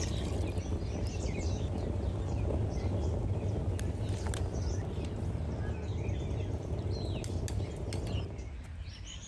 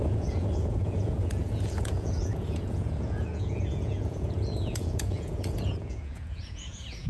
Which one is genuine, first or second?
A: first